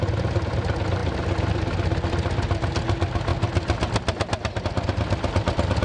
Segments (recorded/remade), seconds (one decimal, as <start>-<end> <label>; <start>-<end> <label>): 0.0-5.8 recorded